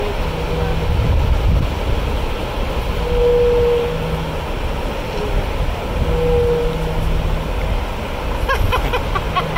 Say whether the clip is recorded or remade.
recorded